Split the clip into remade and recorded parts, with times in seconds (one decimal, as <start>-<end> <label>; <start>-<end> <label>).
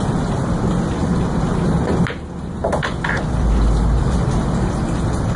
0.0-1.0 recorded; 1.0-1.7 remade; 1.7-2.6 recorded; 2.6-4.7 remade; 4.7-5.4 recorded